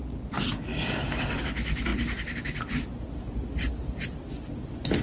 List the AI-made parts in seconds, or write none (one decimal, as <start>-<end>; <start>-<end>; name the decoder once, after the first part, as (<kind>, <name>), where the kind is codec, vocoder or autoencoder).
0.7-1.4 (vocoder, BigVGAN v2)